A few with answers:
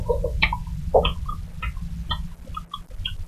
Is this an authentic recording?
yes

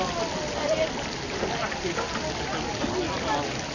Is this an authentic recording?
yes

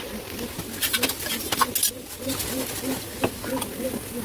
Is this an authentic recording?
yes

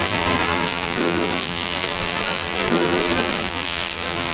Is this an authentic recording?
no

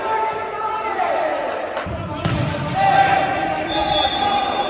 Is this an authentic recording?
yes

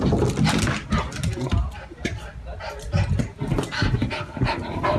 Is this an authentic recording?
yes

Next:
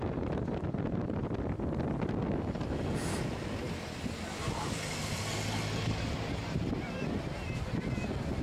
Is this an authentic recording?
yes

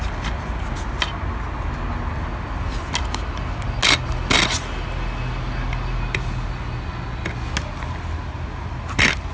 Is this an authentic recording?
yes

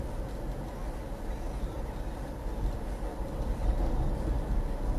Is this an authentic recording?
yes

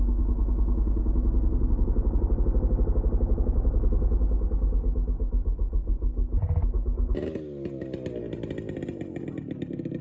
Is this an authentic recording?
yes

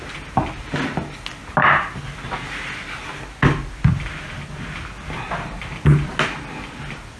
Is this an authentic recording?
yes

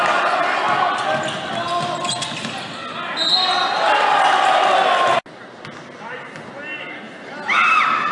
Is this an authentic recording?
yes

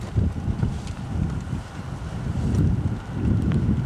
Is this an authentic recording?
yes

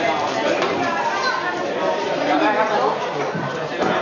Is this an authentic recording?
no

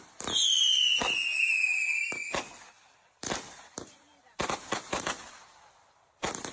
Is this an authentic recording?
no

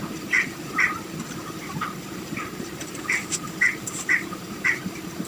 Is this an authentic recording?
no